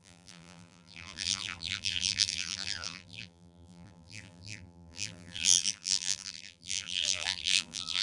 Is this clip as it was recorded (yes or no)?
no